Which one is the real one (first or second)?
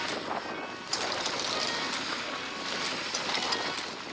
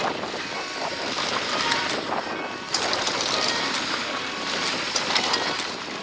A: first